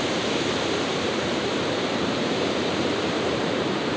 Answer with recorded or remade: remade